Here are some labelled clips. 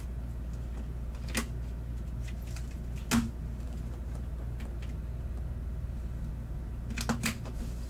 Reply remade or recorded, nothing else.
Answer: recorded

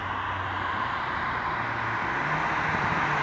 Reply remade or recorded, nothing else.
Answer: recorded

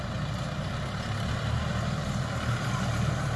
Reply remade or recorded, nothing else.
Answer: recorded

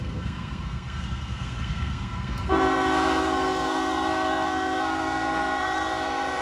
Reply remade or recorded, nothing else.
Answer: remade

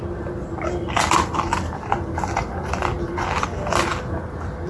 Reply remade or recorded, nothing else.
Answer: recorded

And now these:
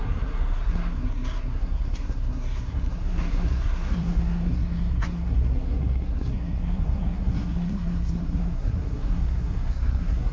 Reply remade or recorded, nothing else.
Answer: remade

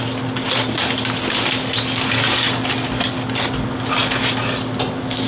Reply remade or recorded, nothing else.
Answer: recorded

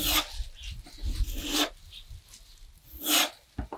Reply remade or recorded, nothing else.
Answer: recorded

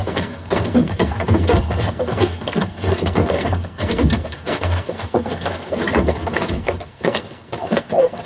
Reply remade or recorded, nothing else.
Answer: remade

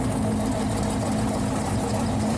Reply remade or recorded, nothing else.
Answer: recorded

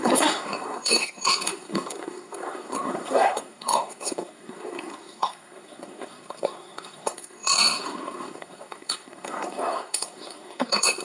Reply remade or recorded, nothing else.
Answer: remade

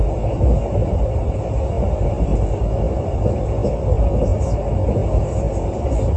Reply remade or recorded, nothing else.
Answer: recorded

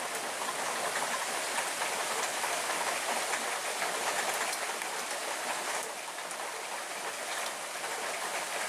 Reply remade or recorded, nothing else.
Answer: recorded